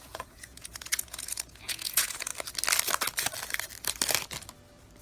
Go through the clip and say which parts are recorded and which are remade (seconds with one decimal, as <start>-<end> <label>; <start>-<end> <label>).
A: 0.0-2.3 remade; 2.3-5.0 recorded